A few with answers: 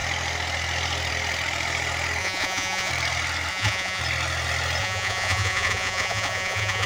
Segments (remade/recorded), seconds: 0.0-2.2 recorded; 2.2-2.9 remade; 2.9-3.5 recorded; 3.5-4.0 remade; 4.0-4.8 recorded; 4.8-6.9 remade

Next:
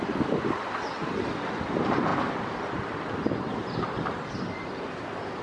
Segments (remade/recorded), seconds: 0.0-5.4 recorded

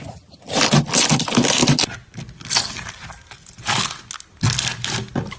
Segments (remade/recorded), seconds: 0.0-5.4 recorded

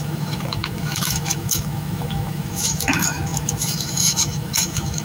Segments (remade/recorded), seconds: 0.0-5.0 remade

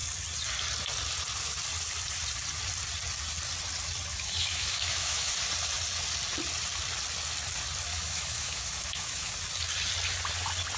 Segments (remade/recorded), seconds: 0.0-4.1 recorded; 4.1-5.3 remade; 5.3-7.9 recorded; 7.9-9.3 remade; 9.3-10.8 recorded

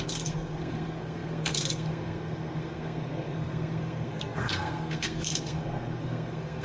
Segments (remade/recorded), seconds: 0.0-6.6 remade

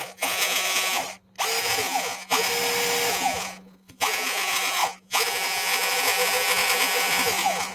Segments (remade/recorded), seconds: 0.0-1.0 remade; 1.0-1.6 recorded; 1.6-2.5 remade; 2.5-3.1 recorded; 3.1-7.7 remade

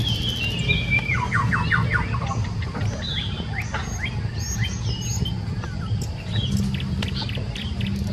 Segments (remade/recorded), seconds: 0.0-8.1 recorded